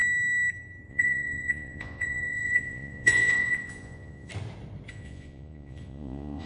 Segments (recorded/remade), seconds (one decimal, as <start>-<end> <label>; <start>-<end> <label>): 0.0-0.9 recorded; 0.9-4.3 remade; 4.3-4.9 recorded; 4.9-6.5 remade